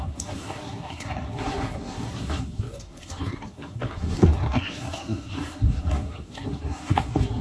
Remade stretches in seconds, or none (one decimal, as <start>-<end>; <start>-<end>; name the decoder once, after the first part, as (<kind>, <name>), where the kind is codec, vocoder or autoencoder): 0.0-7.4 (codec, SNAC)